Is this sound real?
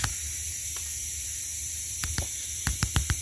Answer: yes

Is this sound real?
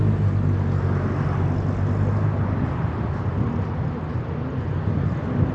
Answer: yes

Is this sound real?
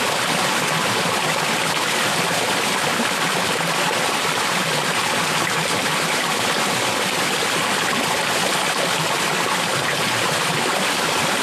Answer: yes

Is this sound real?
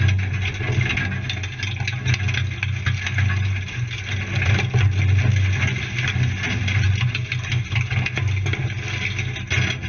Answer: yes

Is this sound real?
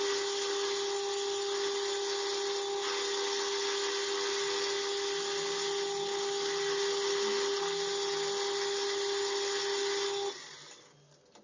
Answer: yes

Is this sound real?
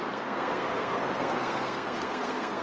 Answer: no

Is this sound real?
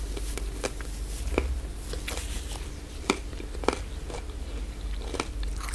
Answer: yes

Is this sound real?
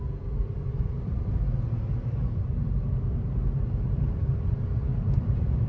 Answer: no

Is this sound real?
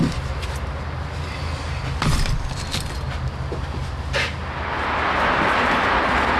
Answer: yes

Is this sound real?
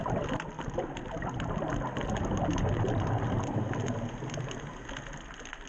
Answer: yes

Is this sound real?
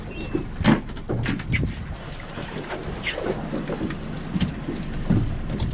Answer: yes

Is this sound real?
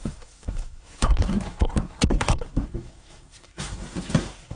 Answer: no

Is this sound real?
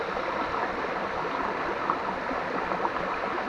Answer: yes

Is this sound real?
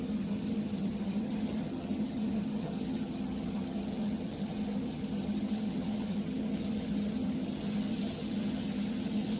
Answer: no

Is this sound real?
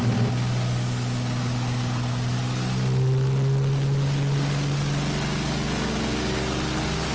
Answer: yes